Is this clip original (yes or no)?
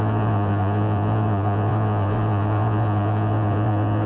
no